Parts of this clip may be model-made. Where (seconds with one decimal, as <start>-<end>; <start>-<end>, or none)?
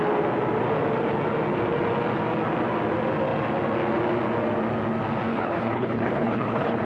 5.3-6.8